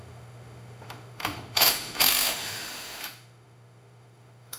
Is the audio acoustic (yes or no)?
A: no